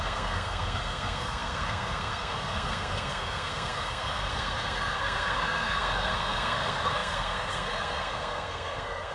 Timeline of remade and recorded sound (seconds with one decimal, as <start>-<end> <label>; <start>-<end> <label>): 0.0-9.1 remade